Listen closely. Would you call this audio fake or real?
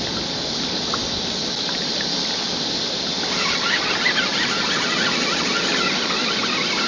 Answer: real